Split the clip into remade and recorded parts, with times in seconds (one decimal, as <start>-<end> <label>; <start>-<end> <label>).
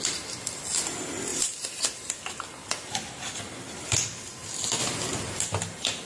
0.0-1.3 recorded; 1.3-1.8 remade; 1.8-2.6 recorded; 2.6-3.4 remade; 3.4-4.8 recorded; 4.8-5.4 remade; 5.4-6.1 recorded